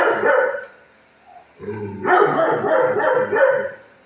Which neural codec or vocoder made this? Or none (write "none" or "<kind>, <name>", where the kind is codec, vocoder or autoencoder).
none